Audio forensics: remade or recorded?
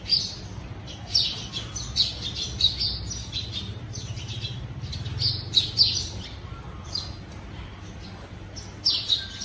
recorded